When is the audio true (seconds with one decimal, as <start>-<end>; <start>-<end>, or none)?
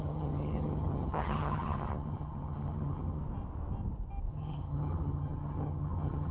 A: 3.2-4.3